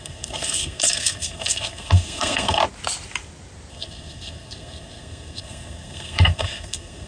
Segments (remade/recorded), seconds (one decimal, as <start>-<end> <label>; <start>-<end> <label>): 0.0-2.6 remade; 2.6-3.7 recorded; 3.7-7.1 remade